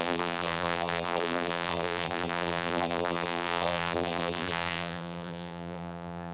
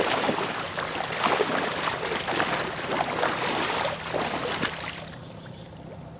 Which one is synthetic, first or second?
first